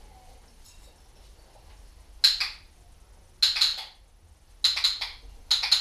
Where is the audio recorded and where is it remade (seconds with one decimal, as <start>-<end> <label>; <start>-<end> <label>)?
0.0-5.8 recorded